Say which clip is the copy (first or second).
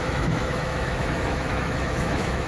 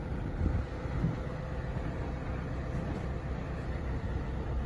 first